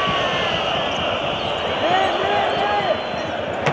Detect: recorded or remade recorded